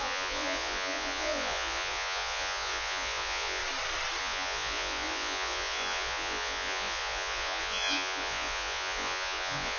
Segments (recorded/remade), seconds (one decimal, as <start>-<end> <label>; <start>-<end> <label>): 0.0-3.6 remade; 3.6-4.2 recorded; 4.2-9.8 remade